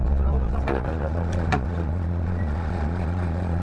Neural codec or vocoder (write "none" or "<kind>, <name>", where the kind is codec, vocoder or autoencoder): vocoder, Vocos